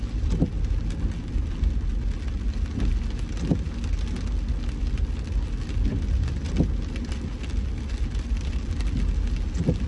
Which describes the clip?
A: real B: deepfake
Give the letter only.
A